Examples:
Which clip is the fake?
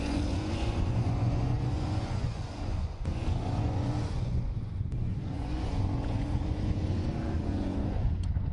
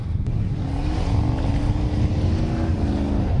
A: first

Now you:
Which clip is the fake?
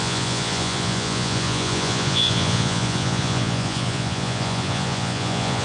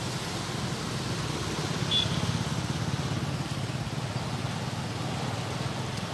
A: first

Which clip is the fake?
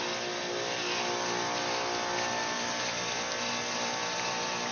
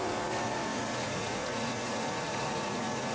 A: second